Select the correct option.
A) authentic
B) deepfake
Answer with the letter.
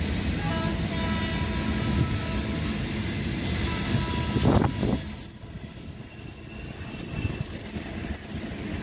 A